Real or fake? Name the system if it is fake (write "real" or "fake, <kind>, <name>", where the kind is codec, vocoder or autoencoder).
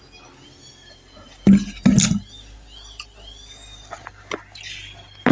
real